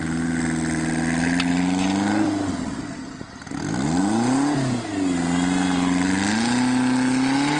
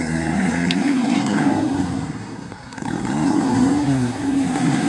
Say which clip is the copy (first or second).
second